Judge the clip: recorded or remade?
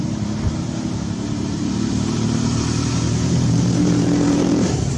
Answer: remade